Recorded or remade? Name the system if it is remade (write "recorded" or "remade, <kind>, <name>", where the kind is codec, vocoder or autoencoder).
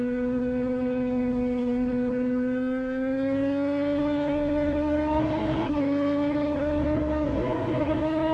remade, codec, SNAC